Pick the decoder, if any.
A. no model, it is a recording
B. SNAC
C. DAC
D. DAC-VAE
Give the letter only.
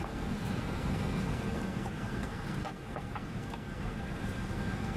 B